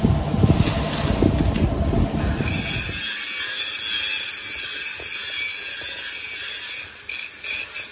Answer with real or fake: real